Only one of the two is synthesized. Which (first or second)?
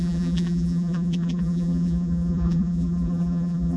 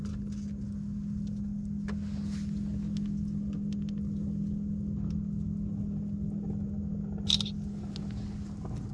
first